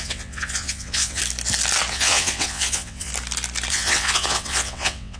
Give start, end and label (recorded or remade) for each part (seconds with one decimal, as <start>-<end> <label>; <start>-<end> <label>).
0.0-1.2 remade; 1.2-1.9 recorded; 1.9-3.1 remade; 3.1-3.7 recorded; 3.7-5.2 remade